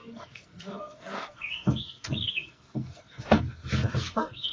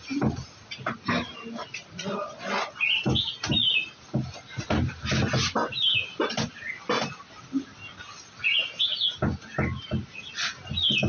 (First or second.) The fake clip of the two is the first